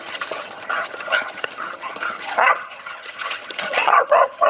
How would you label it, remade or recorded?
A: remade